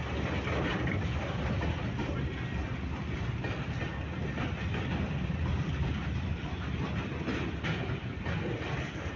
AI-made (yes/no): no